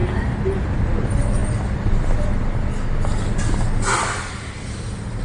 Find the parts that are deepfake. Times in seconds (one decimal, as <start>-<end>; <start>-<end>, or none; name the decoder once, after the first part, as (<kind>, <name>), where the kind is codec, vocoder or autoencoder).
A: none